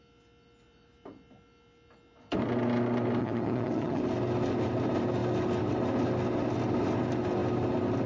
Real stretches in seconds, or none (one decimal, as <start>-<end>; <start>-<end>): 0.0-3.2; 4.0-8.1